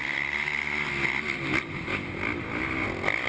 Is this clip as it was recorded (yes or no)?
yes